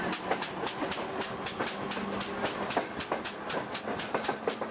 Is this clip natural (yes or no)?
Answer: yes